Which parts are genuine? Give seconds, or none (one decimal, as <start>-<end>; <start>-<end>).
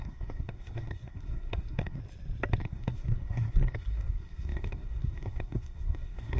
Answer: 2.0-2.6